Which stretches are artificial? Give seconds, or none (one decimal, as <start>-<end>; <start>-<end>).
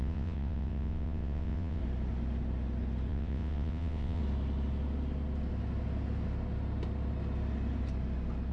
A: 0.0-1.8; 3.1-4.2